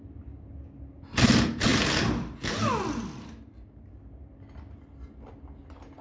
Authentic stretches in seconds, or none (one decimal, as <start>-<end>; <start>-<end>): 0.0-6.0